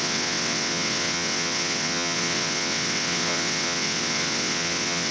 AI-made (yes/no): yes